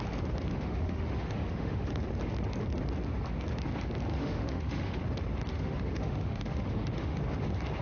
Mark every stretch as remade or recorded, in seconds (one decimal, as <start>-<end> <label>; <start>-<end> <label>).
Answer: 0.0-0.5 recorded; 0.5-1.9 remade; 1.9-4.1 recorded; 4.1-5.0 remade; 5.0-5.5 recorded; 5.5-7.2 remade; 7.2-7.8 recorded